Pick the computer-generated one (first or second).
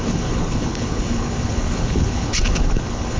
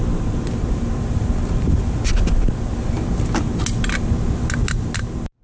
first